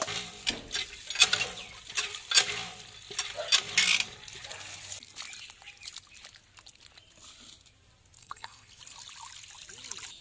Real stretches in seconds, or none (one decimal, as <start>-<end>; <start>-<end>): 0.0-8.2; 8.8-10.2